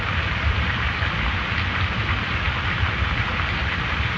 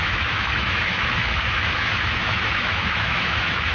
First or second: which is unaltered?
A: first